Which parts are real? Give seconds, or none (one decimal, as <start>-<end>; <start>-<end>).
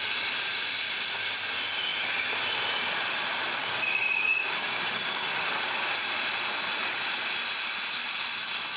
0.0-3.6; 5.3-8.8